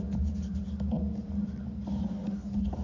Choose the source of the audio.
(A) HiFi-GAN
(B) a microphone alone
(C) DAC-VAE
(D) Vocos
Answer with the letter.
B